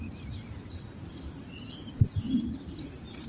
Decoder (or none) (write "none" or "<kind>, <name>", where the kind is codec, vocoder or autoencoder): none